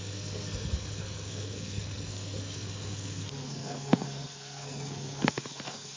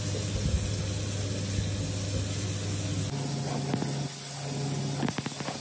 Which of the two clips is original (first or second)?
second